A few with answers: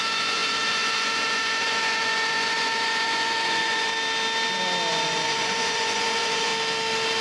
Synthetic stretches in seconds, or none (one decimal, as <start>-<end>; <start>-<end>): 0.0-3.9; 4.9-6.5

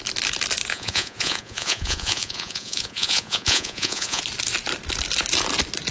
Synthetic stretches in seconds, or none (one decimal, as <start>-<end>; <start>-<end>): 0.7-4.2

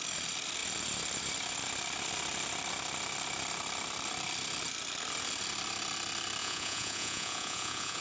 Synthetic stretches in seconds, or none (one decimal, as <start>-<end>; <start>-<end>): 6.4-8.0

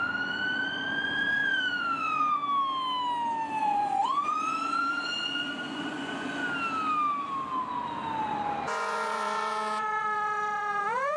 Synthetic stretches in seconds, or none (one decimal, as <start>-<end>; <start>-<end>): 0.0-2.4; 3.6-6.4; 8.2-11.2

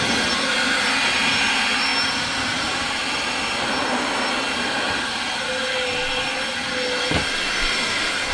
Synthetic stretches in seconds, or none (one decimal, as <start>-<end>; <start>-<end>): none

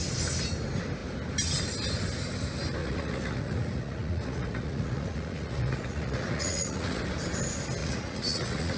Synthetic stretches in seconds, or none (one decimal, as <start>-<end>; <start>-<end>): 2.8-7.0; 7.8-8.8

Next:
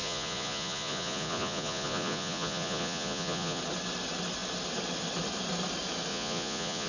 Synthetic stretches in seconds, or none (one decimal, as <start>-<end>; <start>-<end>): 0.0-3.6; 6.1-6.9